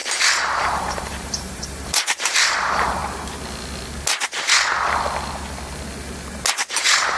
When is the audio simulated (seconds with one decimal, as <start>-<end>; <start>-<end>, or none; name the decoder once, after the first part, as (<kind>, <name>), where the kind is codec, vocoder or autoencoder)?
0.0-3.0 (vocoder, BigVGAN v2); 6.5-7.2